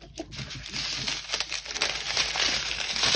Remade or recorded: recorded